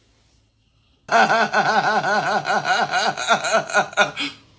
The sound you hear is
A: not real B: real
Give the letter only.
B